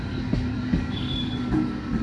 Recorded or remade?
remade